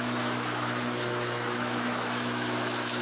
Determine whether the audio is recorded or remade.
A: remade